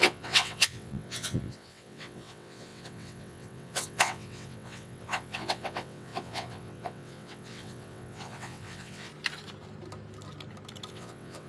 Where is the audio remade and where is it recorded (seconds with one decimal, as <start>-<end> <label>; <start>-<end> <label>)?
0.0-9.1 remade; 9.1-10.9 recorded; 10.9-11.5 remade